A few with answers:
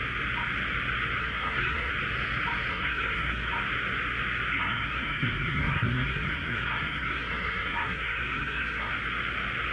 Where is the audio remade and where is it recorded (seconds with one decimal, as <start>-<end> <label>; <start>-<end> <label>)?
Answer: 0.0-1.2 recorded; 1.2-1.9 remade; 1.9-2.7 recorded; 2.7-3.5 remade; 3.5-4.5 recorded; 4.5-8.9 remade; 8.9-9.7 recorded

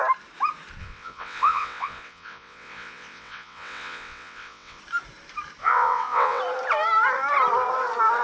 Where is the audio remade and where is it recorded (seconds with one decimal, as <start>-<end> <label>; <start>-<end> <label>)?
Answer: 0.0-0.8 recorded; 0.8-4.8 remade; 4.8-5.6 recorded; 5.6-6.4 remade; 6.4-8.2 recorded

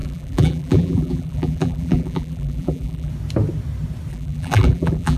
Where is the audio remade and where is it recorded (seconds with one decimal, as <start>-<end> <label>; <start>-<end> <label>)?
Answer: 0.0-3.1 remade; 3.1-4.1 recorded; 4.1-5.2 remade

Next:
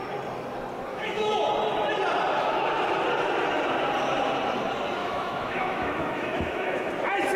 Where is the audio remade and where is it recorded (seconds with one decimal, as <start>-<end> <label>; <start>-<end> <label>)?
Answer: 0.0-0.9 recorded; 0.9-1.5 remade; 1.5-5.0 recorded; 5.0-6.9 remade; 6.9-7.4 recorded